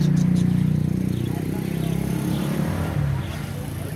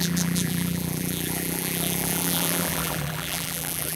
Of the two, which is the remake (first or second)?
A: second